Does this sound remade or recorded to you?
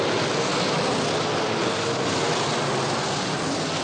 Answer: recorded